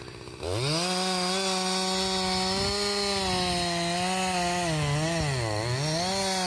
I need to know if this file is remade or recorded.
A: recorded